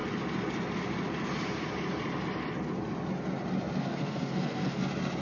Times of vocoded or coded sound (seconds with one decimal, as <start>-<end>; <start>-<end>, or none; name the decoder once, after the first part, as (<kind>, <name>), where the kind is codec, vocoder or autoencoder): 3.8-4.8 (codec, SNAC)